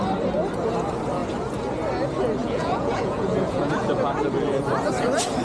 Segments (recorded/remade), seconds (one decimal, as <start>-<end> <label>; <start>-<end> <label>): 0.0-2.4 recorded; 2.4-4.1 remade; 4.1-5.4 recorded